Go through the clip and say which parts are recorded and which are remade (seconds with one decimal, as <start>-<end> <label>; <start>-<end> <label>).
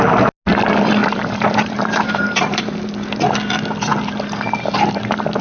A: 0.0-1.0 recorded; 1.0-2.7 remade; 2.7-5.4 recorded